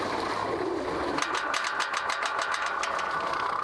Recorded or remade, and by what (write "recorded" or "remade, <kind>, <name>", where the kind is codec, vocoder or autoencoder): recorded